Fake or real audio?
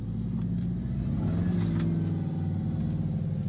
real